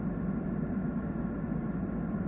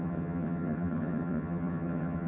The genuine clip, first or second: first